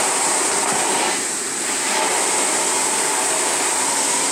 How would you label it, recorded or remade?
recorded